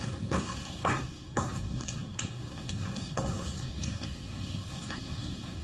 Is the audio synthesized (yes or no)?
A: yes